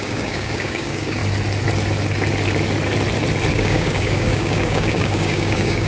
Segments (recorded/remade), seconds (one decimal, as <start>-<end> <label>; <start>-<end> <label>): 0.0-1.2 remade; 1.2-3.5 recorded; 3.5-5.9 remade